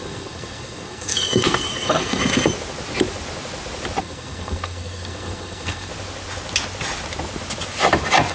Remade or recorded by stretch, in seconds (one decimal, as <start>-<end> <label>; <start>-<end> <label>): 0.0-2.2 remade; 2.2-4.0 recorded; 4.0-5.9 remade; 5.9-8.3 recorded